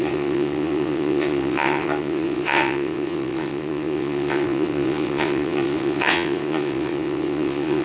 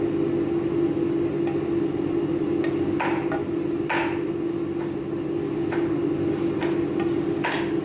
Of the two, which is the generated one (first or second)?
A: first